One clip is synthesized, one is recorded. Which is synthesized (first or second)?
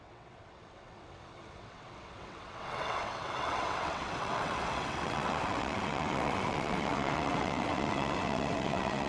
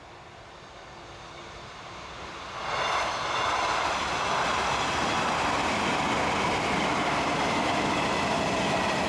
first